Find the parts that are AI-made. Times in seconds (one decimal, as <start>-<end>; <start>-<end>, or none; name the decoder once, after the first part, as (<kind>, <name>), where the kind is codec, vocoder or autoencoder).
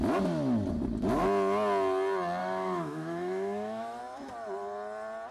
2.4-4.0 (autoencoder, DAC-VAE)